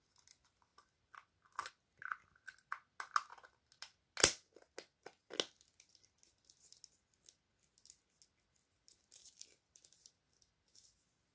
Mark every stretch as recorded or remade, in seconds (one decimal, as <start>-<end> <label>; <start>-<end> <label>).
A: 0.0-9.2 recorded; 9.2-9.8 remade; 9.8-11.3 recorded